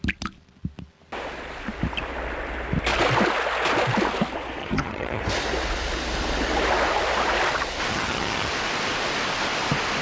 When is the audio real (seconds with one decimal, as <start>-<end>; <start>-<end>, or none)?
0.0-4.6; 5.2-7.9; 8.5-10.0